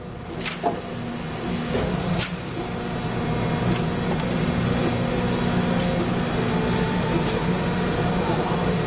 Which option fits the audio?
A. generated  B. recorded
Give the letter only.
B